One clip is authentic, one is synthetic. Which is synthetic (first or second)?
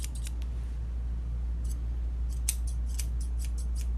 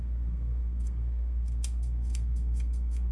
second